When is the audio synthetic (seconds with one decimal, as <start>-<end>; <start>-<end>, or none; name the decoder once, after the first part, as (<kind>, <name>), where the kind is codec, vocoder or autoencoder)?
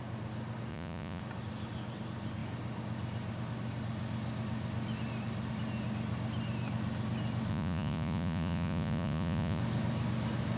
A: 0.7-1.2 (vocoder, Vocos); 7.5-9.6